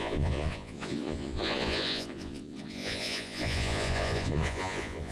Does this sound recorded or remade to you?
remade